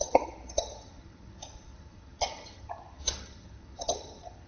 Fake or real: fake